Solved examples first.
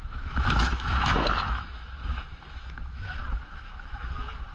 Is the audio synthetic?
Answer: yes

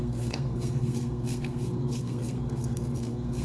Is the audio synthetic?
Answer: yes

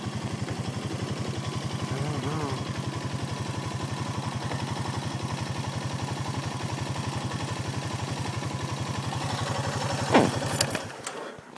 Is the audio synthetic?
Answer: no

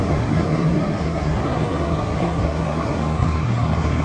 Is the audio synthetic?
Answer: yes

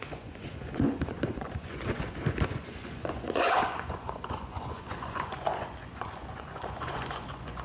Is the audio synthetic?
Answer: yes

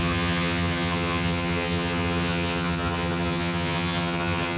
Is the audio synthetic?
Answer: yes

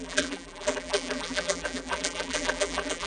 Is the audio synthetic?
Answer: yes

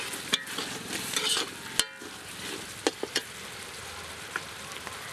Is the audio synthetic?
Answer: no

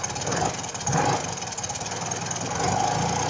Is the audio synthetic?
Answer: no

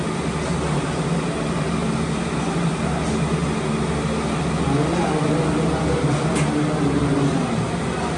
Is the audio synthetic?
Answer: no